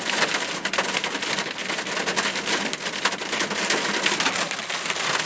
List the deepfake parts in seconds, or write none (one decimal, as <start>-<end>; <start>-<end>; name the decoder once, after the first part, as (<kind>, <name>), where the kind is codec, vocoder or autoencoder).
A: none